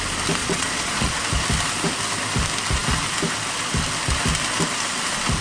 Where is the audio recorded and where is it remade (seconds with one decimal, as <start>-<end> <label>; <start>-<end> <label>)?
0.0-0.4 recorded; 0.4-1.2 remade; 1.2-5.4 recorded